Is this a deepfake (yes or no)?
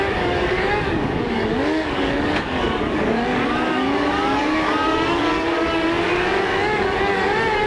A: yes